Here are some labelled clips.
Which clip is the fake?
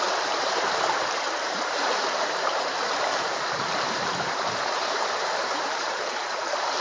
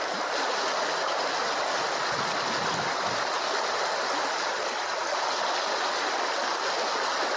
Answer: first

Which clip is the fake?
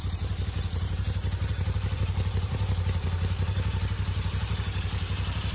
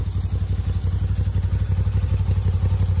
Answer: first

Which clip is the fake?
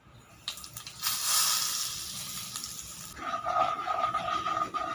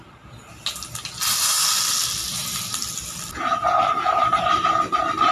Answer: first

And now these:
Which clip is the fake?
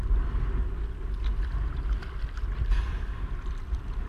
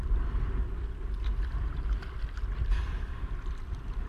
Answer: second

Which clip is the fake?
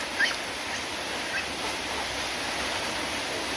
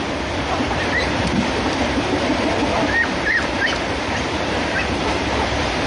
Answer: second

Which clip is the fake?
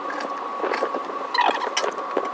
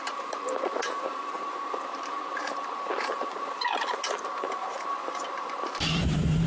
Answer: second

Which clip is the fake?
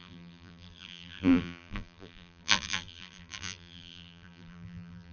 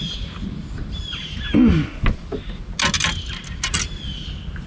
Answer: first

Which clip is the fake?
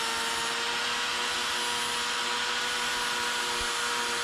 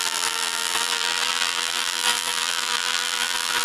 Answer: second